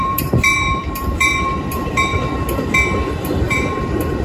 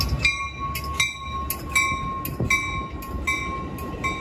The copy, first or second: first